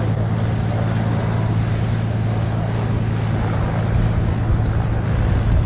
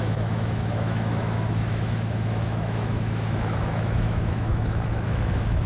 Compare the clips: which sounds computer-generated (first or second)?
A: second